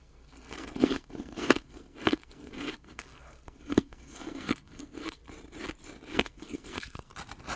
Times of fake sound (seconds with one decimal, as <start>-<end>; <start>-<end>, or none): 0.0-5.2; 6.1-7.1